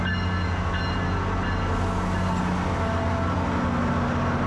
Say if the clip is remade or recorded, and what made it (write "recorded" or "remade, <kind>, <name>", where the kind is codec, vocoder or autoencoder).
recorded